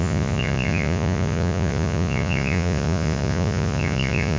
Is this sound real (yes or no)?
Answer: no